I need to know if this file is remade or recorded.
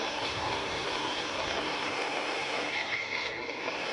remade